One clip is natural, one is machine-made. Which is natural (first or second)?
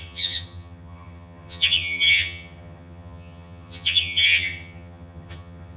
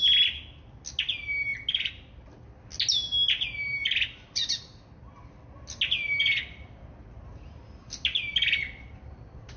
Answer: second